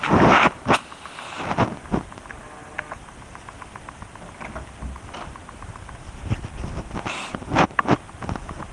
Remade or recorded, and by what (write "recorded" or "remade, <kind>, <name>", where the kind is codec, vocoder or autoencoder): recorded